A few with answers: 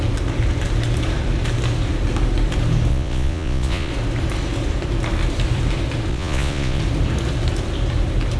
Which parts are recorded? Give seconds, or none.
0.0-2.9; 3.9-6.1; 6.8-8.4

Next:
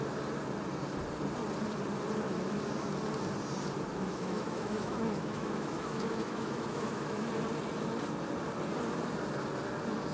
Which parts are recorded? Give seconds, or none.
0.0-3.9; 7.3-10.1

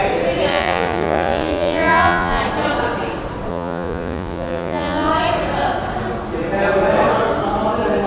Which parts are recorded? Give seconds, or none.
0.0-0.5; 2.4-3.5; 5.1-8.1

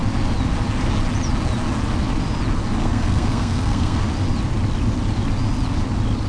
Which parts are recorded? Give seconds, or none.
0.0-2.8; 4.0-6.3